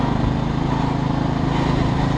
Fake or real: real